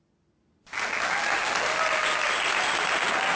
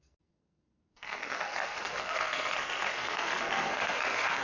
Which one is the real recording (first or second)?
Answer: first